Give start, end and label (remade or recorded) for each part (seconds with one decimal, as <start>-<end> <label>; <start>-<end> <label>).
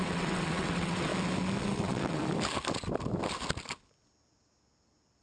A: 0.0-1.1 remade; 1.1-1.6 recorded; 1.6-2.2 remade; 2.2-5.2 recorded